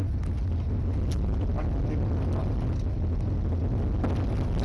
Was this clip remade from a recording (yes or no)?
no